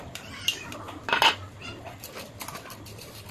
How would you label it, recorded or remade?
recorded